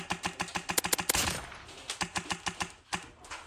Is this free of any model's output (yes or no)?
yes